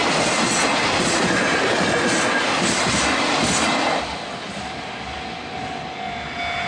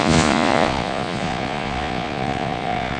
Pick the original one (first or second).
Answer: first